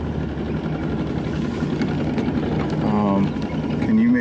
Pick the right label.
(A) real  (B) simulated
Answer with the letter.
A